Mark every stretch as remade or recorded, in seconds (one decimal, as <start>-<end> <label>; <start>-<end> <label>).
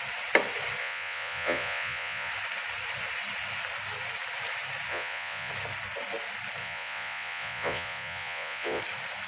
0.0-0.8 recorded; 0.8-2.3 remade; 2.3-4.9 recorded; 4.9-5.5 remade; 5.5-6.6 recorded; 6.6-8.8 remade; 8.8-9.3 recorded